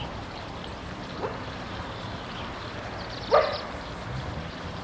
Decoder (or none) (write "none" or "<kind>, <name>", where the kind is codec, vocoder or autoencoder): vocoder, BigVGAN v2